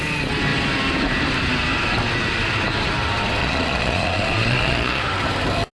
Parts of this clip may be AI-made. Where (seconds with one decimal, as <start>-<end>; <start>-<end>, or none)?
3.4-5.0